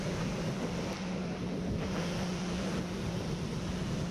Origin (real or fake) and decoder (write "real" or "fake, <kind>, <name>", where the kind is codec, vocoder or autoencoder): real